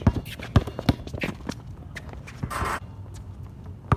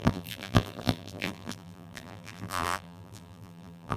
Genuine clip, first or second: first